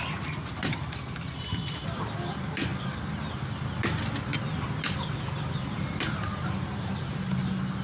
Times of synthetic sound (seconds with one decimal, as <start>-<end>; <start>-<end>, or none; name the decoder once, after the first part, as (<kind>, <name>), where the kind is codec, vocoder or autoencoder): none

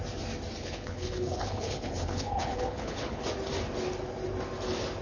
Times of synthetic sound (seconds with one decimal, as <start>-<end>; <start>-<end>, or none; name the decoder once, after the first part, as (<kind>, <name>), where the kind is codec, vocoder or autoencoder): 0.6-3.2 (codec, HILCodec)

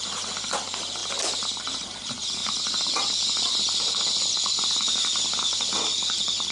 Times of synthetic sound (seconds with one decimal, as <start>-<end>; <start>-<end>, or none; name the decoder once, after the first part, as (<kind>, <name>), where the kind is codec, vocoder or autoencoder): none